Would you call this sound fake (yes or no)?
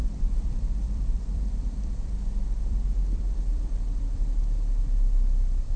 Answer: yes